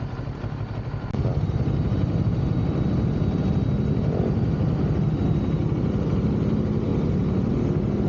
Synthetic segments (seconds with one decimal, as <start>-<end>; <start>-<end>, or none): none